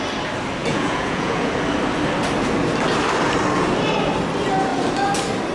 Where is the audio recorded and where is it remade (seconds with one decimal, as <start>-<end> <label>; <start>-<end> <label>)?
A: 0.0-0.6 recorded; 0.6-1.5 remade; 1.5-5.5 recorded